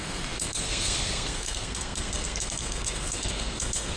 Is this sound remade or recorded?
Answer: remade